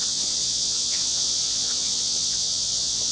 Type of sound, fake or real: fake